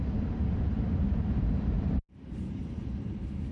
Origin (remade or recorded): remade